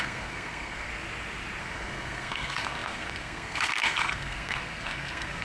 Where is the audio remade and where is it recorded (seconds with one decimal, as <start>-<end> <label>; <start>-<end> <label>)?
0.0-0.9 remade; 0.9-1.6 recorded; 1.6-5.4 remade

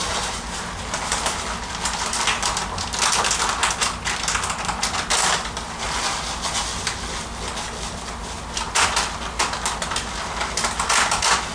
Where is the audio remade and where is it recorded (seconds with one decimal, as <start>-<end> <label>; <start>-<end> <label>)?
0.0-11.5 recorded